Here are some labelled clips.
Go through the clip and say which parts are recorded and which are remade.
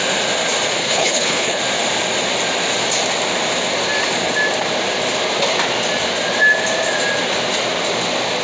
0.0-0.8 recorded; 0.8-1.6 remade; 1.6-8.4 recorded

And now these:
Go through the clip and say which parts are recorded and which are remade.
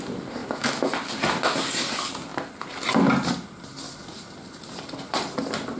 0.0-0.4 recorded; 0.4-0.9 remade; 0.9-5.8 recorded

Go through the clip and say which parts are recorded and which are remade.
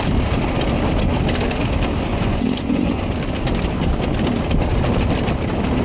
0.0-2.1 recorded; 2.1-3.0 remade; 3.0-5.8 recorded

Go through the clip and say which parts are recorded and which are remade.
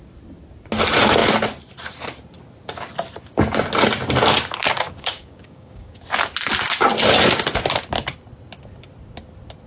0.0-4.6 recorded; 4.6-6.0 remade; 6.0-9.7 recorded